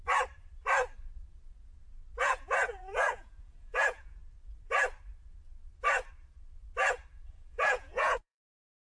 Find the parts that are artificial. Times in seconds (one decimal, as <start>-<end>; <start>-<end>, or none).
2.2-4.2; 7.3-8.9